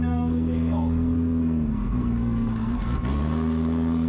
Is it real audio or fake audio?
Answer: fake